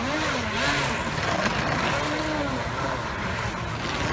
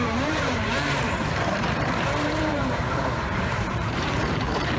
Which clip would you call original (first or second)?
first